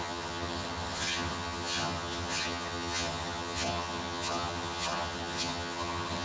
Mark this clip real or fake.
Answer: fake